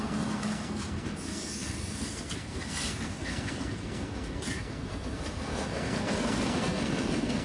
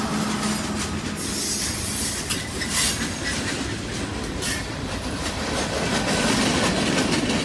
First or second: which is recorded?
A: second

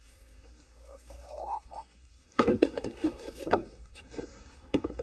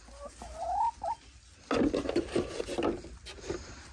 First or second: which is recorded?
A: second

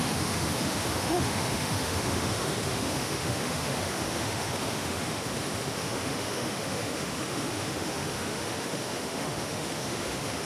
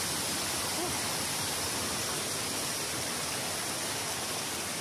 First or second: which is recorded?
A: second